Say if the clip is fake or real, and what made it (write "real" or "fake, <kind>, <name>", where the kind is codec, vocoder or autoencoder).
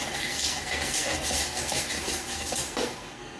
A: fake, codec, SNAC